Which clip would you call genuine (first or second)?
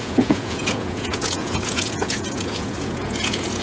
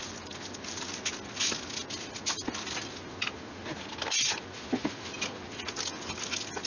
second